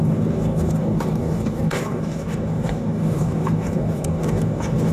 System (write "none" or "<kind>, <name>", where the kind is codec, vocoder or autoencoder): codec, DAC